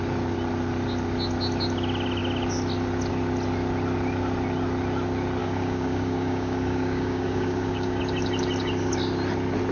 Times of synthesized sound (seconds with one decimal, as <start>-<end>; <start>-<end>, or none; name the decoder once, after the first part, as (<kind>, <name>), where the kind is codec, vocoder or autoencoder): 5.4-8.0 (codec, DAC)